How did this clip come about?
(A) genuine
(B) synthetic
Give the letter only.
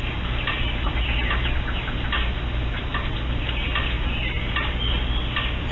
A